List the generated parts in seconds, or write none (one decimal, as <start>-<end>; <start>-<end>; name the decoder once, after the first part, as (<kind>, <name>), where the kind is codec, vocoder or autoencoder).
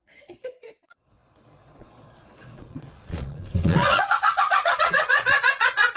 0.0-6.0 (vocoder, Vocos)